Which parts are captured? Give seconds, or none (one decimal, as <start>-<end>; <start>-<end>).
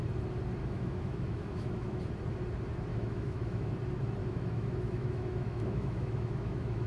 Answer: 0.0-0.6; 2.0-2.9; 3.7-4.2